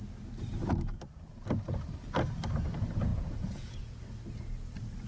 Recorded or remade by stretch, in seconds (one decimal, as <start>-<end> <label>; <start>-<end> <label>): 0.0-3.1 recorded; 3.1-4.0 remade; 4.0-5.1 recorded

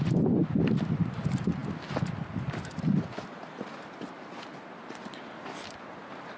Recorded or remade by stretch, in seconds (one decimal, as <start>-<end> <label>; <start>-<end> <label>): 0.0-6.4 recorded

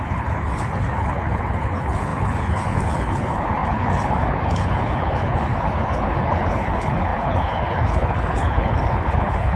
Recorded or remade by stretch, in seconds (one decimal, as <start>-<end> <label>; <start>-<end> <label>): 0.0-9.6 remade